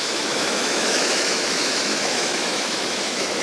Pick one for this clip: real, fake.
fake